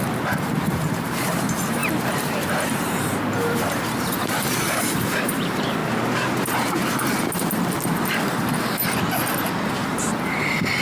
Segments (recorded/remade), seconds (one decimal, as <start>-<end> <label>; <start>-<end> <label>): 0.0-5.8 remade; 5.8-10.4 recorded; 10.4-10.8 remade